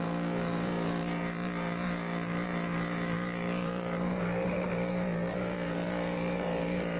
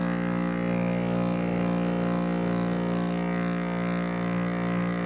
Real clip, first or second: second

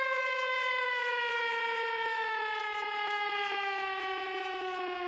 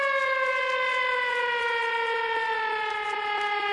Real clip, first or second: second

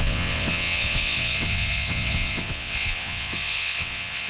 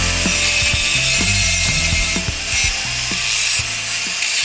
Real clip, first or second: second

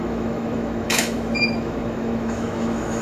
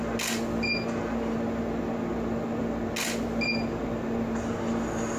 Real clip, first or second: second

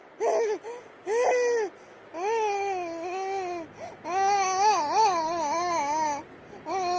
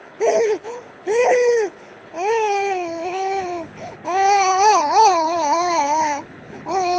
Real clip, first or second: first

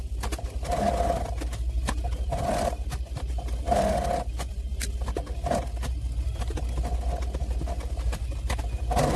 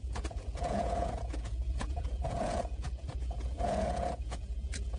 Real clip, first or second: first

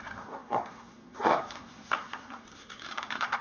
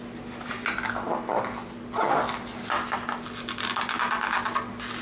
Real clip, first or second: second